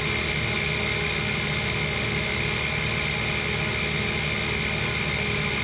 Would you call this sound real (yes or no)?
yes